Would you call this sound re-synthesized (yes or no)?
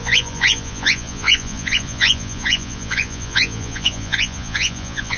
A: yes